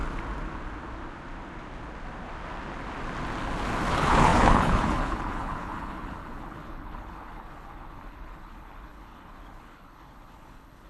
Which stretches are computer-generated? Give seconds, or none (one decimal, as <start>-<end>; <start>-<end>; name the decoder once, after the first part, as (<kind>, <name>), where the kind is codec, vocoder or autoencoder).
3.9-10.9 (codec, HILCodec)